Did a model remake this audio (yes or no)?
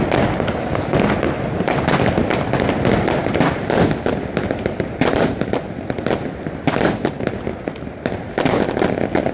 no